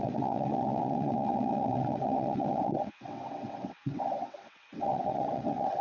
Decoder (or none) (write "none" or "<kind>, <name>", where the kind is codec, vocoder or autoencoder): vocoder, WaveNeXt